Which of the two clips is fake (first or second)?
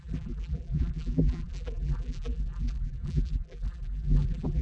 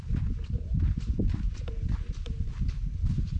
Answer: first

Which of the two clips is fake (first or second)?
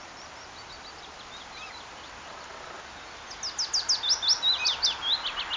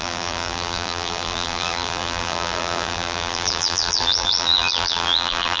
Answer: second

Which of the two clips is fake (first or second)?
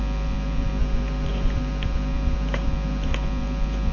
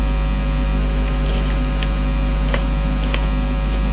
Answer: first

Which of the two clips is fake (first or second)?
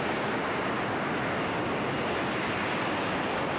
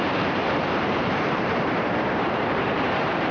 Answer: second